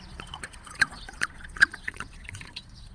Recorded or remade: remade